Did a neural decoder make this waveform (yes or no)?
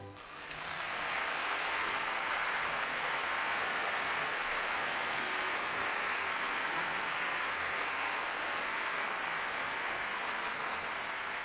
yes